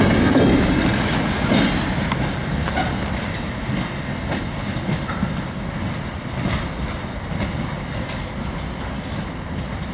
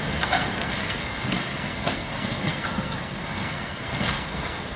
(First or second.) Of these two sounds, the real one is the first